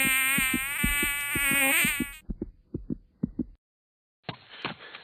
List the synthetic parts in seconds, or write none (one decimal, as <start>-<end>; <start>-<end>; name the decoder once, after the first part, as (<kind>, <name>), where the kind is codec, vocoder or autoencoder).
none